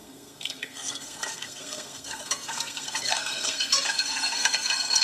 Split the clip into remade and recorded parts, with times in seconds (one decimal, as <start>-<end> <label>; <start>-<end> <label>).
0.0-5.0 remade